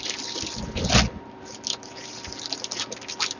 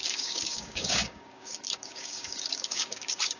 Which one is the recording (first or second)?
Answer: first